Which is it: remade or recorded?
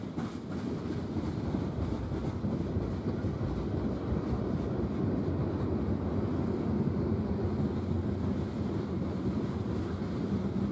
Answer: recorded